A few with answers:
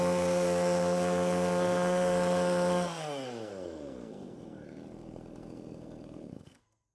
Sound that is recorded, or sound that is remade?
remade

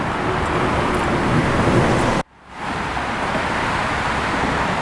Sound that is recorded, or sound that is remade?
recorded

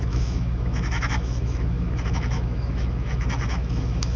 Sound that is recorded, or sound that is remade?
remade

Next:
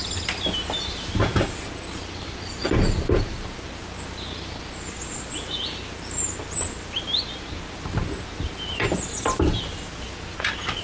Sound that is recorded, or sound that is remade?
recorded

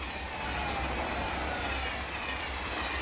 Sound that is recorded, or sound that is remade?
recorded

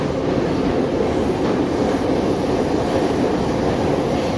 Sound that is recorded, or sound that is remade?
recorded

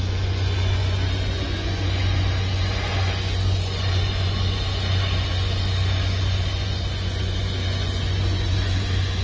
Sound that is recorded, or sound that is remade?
remade